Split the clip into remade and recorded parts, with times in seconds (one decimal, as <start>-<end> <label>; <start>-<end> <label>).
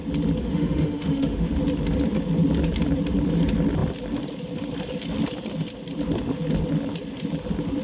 0.0-0.4 recorded; 0.4-1.5 remade; 1.5-7.8 recorded